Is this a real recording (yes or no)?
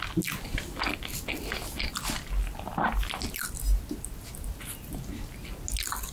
yes